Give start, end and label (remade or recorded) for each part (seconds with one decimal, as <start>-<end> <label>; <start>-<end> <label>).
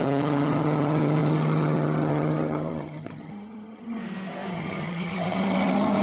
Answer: 0.0-4.0 remade; 4.0-4.5 recorded; 4.5-6.0 remade